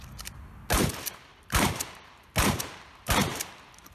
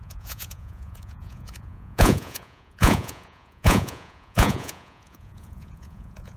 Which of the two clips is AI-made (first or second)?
second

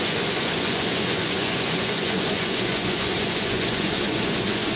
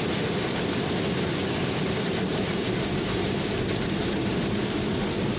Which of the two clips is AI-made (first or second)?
first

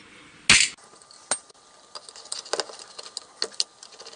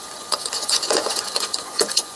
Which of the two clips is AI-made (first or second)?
second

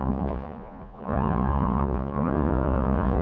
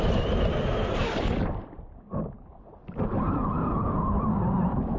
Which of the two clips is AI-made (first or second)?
first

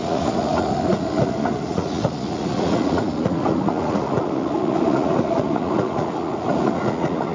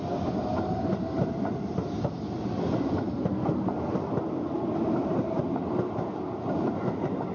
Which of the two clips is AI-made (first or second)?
first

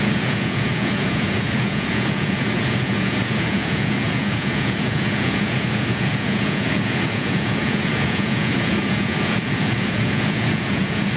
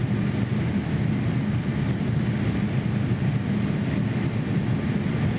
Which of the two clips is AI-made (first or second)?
first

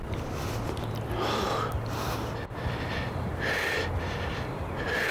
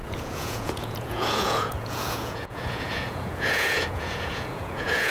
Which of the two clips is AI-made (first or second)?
second